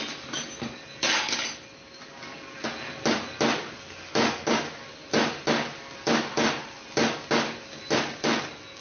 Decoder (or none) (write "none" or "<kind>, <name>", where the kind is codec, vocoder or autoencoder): none